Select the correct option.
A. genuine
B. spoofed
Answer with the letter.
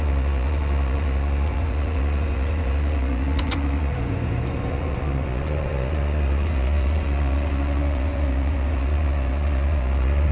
B